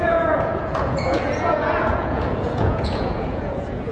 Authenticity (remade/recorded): remade